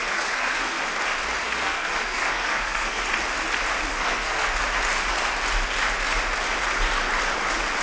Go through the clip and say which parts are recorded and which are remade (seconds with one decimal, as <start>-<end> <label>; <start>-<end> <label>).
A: 0.0-0.8 remade; 0.8-1.4 recorded; 1.4-3.0 remade; 3.0-3.9 recorded; 3.9-4.6 remade; 4.6-7.8 recorded